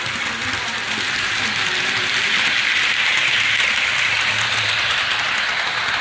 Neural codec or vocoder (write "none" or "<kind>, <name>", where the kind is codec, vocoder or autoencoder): none